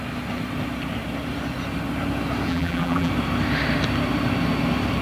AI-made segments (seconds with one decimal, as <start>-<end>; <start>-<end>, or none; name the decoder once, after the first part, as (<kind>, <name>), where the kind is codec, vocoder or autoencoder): 2.5-3.1 (vocoder, BigVGAN v2)